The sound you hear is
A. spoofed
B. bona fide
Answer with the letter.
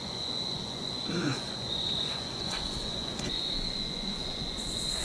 A